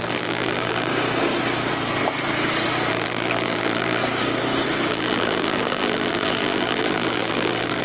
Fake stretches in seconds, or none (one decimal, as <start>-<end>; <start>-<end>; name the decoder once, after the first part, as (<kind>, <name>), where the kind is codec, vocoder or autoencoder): 0.0-0.9 (vocoder, BigVGAN v2); 2.9-4.0; 4.9-7.8